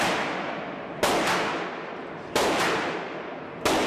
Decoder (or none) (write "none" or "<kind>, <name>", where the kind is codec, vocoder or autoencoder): none